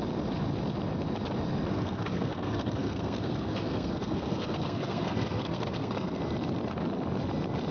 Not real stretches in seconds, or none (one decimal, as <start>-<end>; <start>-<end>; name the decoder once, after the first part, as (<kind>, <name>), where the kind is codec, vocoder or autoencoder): 1.7-6.2 (codec, SNAC)